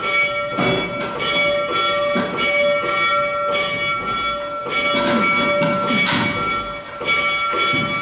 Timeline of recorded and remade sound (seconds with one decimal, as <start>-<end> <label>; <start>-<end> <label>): 0.0-8.0 recorded